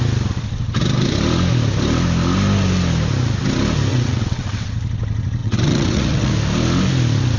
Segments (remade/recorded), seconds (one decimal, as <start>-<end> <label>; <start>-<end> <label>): 0.0-3.9 recorded; 3.9-4.7 remade; 4.7-5.4 recorded; 5.4-6.3 remade; 6.3-7.4 recorded